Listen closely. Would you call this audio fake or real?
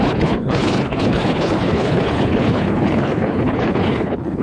fake